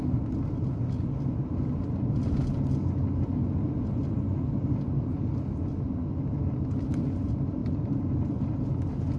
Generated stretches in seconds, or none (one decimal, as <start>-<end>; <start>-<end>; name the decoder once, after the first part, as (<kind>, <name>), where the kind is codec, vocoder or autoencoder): 7.6-9.2 (vocoder, BigVGAN v2)